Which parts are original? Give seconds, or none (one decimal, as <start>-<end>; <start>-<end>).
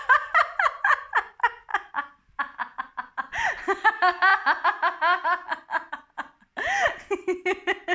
0.0-7.9